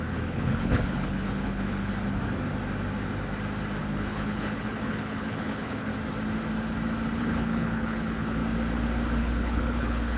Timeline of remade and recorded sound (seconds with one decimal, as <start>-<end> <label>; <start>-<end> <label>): 0.0-2.2 remade; 2.2-3.8 recorded; 3.8-5.9 remade; 5.9-7.2 recorded; 7.2-8.4 remade; 8.4-9.2 recorded; 9.2-10.2 remade